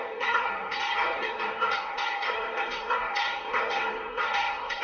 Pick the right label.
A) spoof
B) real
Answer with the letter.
A